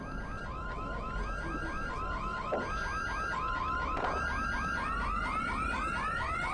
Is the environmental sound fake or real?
real